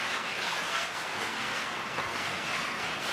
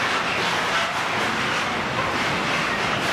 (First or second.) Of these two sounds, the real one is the second